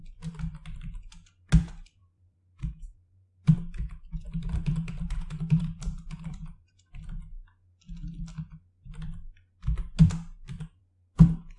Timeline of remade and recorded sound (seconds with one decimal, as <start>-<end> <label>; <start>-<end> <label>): 0.0-2.0 recorded; 2.0-6.9 remade; 6.9-11.6 recorded